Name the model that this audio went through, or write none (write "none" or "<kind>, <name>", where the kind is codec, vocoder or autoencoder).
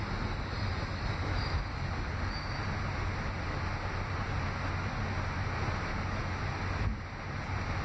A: none